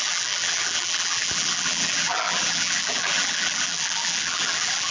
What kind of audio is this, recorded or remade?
remade